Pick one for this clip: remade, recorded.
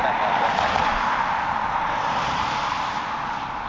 recorded